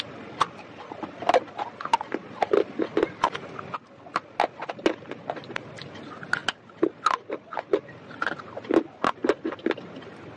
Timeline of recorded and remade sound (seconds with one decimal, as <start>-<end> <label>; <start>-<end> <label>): 0.0-10.4 recorded